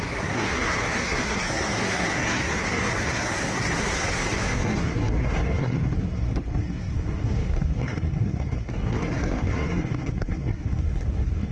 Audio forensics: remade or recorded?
remade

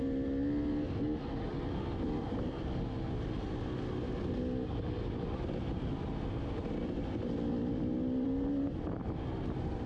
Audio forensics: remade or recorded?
recorded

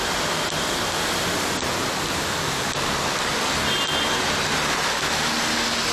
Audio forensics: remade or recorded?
recorded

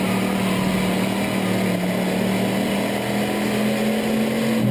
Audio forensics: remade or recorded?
recorded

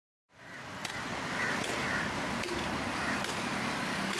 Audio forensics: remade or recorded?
recorded